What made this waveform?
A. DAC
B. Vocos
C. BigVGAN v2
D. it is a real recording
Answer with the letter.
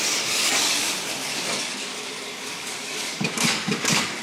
A